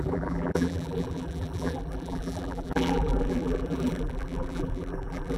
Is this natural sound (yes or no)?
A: no